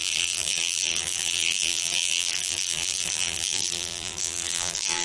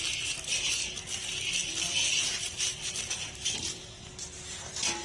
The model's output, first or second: first